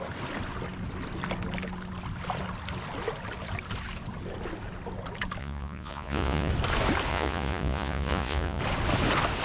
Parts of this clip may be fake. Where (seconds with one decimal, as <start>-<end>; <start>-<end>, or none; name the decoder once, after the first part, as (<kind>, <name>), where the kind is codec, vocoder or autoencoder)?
5.4-6.5 (vocoder, Vocos); 7.1-8.6